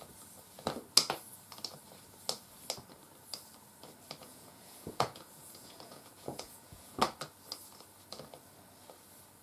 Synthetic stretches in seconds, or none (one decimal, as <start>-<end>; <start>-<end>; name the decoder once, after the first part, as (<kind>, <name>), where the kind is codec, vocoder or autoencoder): 4.2-7.0 (vocoder, Vocos)